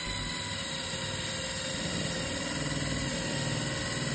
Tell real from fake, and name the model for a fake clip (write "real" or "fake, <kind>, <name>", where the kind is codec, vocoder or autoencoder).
fake, vocoder, BigVGAN v2